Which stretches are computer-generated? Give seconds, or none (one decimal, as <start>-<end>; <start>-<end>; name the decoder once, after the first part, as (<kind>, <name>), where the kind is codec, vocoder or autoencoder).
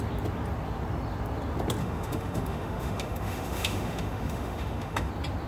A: 1.8-5.1 (autoencoder, DAC-VAE)